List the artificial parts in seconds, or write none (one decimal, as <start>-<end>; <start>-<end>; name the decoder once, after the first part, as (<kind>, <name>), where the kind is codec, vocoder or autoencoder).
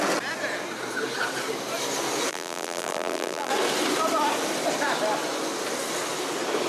2.3-3.5 (vocoder, BigVGAN v2)